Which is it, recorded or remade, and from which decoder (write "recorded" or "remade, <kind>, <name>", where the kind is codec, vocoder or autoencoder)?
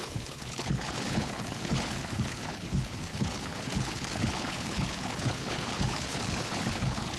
remade, codec, HILCodec